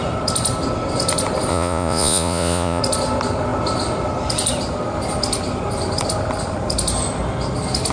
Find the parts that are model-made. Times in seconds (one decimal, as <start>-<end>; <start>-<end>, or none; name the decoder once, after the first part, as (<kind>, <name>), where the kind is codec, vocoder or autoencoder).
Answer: 1.5-2.8 (vocoder, Vocos)